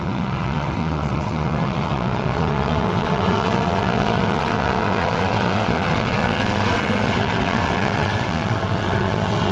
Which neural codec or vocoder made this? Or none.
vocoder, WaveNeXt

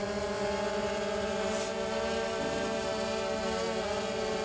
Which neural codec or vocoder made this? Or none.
none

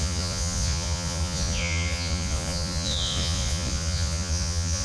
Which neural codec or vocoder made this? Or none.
vocoder, Vocos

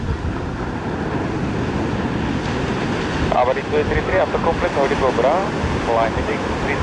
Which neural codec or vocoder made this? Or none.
none